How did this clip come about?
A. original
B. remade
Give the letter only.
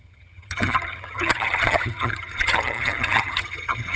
B